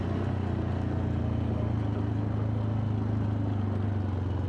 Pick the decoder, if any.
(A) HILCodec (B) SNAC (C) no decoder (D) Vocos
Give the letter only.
C